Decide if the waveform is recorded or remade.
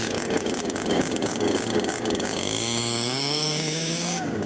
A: remade